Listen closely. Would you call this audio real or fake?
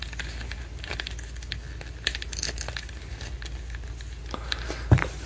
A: real